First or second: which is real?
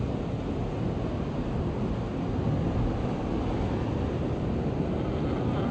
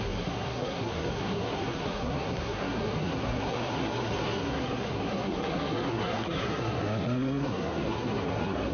first